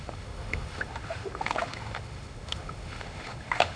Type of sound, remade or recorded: remade